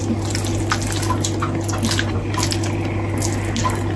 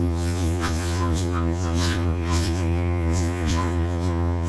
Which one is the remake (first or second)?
second